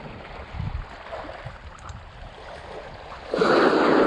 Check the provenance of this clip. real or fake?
real